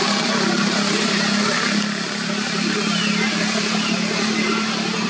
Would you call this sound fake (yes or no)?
no